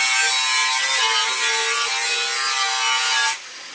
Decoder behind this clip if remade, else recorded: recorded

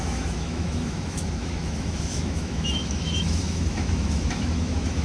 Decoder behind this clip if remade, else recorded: remade, autoencoder, DAC-VAE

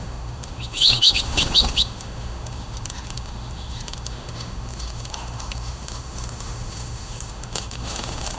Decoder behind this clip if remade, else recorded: remade, autoencoder, DAC-VAE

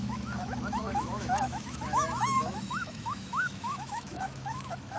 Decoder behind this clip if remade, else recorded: remade, autoencoder, DAC-VAE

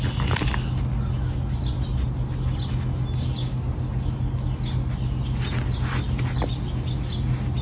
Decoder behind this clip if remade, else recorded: recorded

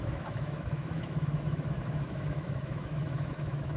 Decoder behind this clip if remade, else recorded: remade, autoencoder, DAC-VAE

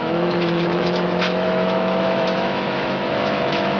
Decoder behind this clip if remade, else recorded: remade, autoencoder, DAC-VAE